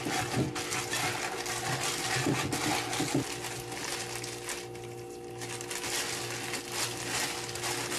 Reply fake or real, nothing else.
real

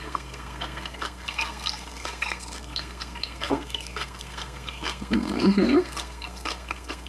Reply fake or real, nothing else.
fake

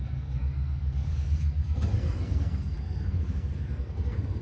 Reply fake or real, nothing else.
fake